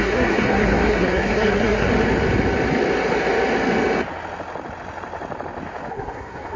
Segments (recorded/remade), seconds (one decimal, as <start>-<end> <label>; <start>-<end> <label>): 0.0-1.9 remade; 1.9-5.9 recorded; 5.9-6.6 remade